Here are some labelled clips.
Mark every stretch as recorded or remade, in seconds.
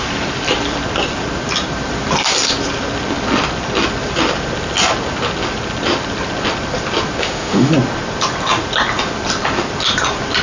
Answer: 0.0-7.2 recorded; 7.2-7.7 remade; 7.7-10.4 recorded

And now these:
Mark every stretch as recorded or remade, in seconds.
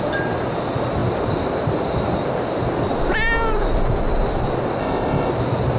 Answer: 0.0-4.8 recorded; 4.8-5.3 remade; 5.3-5.8 recorded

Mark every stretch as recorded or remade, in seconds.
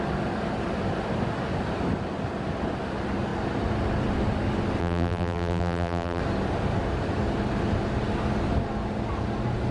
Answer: 0.0-4.8 recorded; 4.8-6.2 remade; 6.2-9.7 recorded